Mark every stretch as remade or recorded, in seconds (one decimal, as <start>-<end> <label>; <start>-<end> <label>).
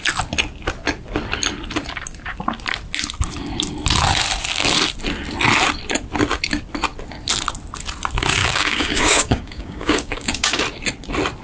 0.0-8.4 recorded; 8.4-10.6 remade; 10.6-11.4 recorded